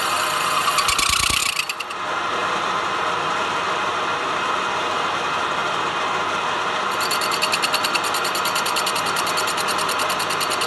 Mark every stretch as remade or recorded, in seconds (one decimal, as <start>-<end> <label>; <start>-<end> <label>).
0.0-5.6 remade; 5.6-8.9 recorded; 8.9-10.7 remade